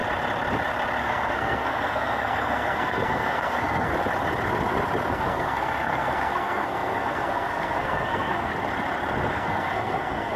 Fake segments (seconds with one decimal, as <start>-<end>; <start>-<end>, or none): 1.0-3.9; 5.1-8.5; 9.3-10.4